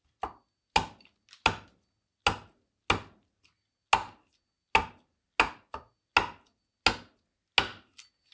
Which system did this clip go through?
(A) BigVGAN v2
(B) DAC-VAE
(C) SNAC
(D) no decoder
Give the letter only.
D